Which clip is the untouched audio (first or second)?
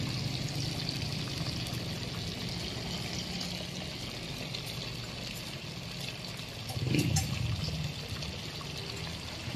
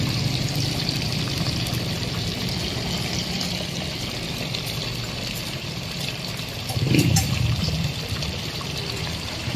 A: first